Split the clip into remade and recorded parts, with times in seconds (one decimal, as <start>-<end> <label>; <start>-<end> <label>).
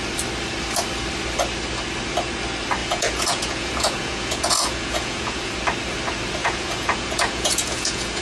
0.0-2.8 recorded; 2.8-5.5 remade; 5.5-6.4 recorded; 6.4-8.2 remade